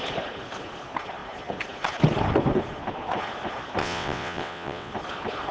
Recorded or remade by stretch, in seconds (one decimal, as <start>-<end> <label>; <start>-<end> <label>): 0.0-3.8 recorded; 3.8-4.9 remade; 4.9-5.5 recorded